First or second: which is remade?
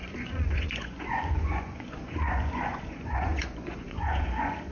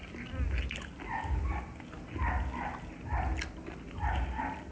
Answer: first